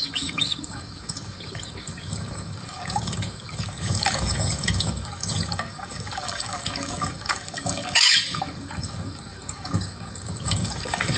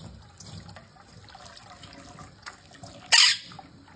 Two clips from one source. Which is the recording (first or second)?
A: second